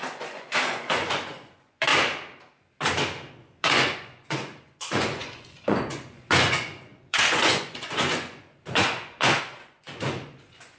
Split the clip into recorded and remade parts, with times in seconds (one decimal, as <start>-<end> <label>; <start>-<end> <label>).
0.0-1.9 remade; 1.9-3.3 recorded; 3.3-10.8 remade